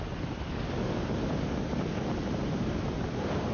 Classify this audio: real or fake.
real